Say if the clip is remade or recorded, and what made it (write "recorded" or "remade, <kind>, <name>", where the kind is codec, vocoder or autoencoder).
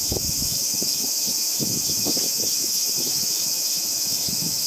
remade, autoencoder, DAC-VAE